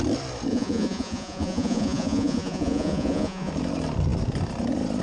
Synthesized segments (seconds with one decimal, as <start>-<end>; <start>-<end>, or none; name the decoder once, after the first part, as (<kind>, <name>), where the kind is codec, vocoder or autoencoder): 0.5-3.5 (vocoder, Vocos)